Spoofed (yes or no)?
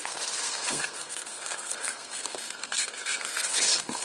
yes